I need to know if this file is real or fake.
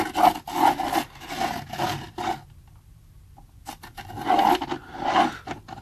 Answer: real